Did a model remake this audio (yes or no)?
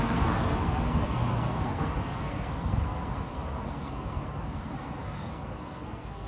yes